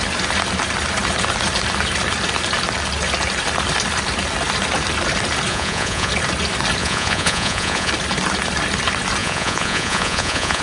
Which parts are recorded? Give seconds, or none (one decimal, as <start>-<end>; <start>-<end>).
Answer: 0.0-5.5; 6.1-6.8; 7.9-9.2